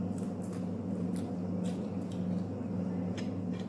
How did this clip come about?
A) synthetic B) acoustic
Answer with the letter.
B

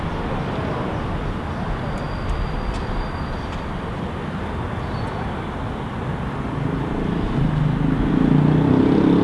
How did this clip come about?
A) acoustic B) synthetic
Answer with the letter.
A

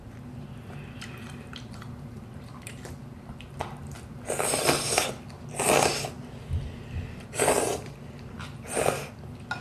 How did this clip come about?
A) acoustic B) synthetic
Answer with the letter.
B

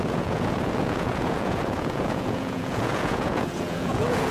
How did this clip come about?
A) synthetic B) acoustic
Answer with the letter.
A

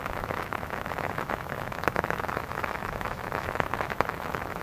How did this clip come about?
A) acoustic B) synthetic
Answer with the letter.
B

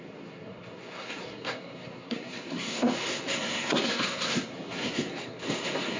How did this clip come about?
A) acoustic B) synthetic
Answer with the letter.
B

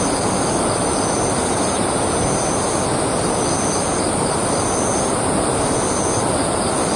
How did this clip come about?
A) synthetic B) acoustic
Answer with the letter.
B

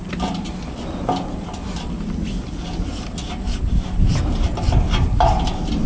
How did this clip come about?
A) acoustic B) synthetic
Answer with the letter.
A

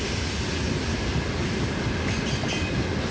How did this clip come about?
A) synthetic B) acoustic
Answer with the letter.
B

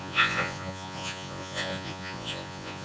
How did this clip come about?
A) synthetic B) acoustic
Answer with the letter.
A